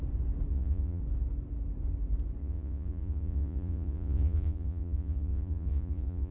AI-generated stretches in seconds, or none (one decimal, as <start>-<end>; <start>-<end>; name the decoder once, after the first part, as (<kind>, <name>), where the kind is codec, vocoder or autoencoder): 0.5-1.0 (vocoder, Vocos); 2.4-6.3